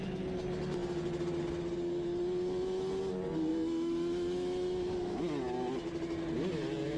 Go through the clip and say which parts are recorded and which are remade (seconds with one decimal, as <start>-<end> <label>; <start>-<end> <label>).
0.0-3.5 recorded; 3.5-5.2 remade; 5.2-7.0 recorded